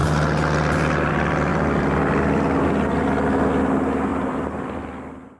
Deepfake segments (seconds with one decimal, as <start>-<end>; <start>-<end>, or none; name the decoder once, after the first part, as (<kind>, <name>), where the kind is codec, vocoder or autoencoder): 1.5-2.6 (vocoder, BigVGAN v2); 4.1-4.8